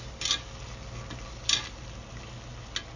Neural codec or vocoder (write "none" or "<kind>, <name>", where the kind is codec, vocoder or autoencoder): none